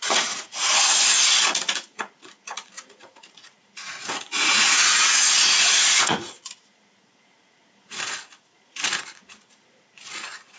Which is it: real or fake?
fake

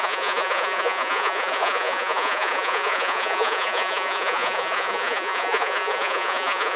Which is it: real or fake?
fake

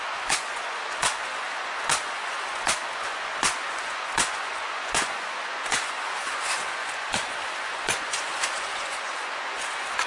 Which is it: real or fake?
fake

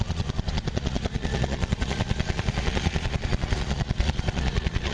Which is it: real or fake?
fake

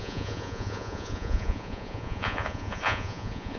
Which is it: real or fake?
fake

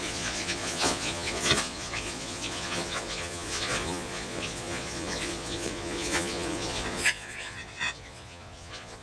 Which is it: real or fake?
fake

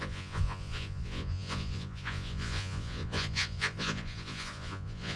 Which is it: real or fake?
fake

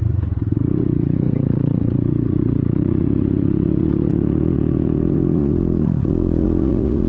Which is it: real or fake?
fake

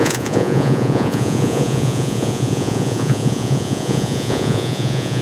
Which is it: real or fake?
fake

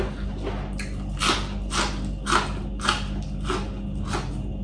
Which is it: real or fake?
real